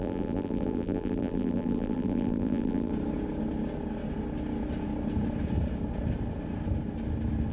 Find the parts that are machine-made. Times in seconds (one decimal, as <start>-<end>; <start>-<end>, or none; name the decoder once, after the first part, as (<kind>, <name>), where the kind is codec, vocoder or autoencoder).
0.0-2.9 (vocoder, BigVGAN v2)